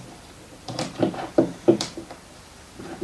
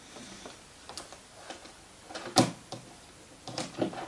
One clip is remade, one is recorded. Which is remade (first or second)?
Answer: first